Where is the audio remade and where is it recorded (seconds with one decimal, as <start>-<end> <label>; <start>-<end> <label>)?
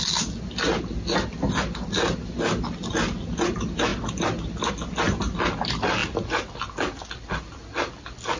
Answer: 0.0-8.4 recorded